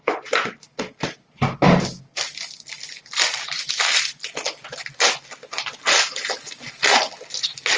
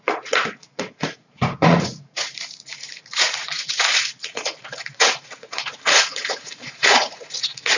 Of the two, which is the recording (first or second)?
first